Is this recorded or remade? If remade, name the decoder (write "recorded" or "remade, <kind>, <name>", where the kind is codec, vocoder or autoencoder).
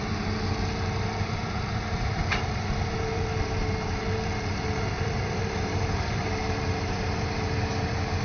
remade, vocoder, BigVGAN v2